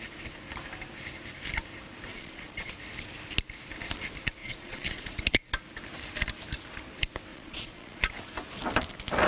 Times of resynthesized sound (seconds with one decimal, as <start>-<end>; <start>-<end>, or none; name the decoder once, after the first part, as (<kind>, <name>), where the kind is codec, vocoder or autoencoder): 2.1-2.7 (vocoder, Vocos); 4.4-5.5; 7.3-8.1